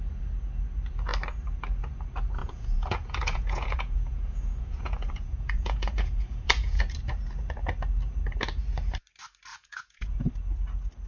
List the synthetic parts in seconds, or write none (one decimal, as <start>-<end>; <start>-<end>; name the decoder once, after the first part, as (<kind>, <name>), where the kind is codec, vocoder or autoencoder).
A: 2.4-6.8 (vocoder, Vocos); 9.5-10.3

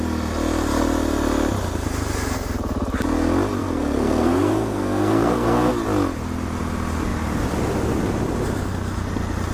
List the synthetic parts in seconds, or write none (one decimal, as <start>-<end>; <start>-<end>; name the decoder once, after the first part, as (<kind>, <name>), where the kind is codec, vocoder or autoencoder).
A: 3.6-5.7 (codec, SNAC)

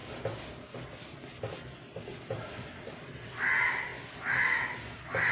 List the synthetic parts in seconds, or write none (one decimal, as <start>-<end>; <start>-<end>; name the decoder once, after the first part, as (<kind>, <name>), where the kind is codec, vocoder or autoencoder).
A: none

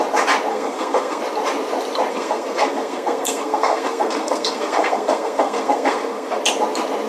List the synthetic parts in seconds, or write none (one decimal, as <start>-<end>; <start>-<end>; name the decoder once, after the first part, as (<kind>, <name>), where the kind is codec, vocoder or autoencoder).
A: 0.5-1.2 (codec, SNAC); 2.1-6.4

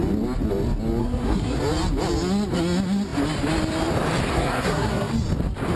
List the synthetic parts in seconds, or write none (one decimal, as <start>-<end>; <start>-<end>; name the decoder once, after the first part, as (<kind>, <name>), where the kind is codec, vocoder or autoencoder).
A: 1.0-1.6 (codec, SNAC); 4.3-5.1